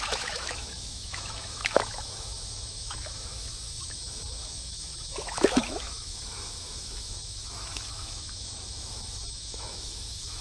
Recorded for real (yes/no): no